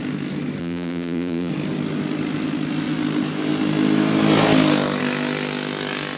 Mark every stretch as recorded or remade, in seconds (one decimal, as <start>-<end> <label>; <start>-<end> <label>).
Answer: 0.0-0.6 recorded; 0.6-1.5 remade; 1.5-6.2 recorded